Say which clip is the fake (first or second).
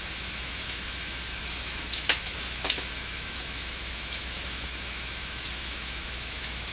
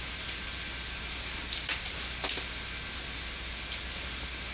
first